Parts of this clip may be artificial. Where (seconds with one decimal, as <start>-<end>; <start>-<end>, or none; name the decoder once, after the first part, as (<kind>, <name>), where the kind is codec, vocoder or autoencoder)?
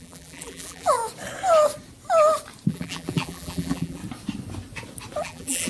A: 0.0-1.0 (vocoder, BigVGAN v2); 2.7-4.0; 5.2-5.7